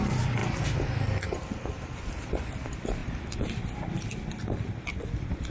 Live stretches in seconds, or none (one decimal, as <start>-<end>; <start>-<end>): 0.0-5.5